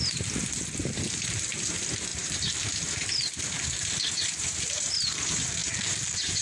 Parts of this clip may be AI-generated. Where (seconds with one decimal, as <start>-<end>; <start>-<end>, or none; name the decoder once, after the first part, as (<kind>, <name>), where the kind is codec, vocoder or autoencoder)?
0.8-1.5 (vocoder, BigVGAN v2); 2.1-4.9; 5.6-6.4